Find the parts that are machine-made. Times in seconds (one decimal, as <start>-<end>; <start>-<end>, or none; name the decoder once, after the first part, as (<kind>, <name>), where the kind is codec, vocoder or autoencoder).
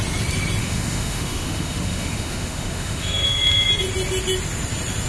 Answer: 0.6-3.7 (autoencoder, DAC-VAE)